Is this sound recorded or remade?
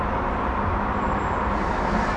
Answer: recorded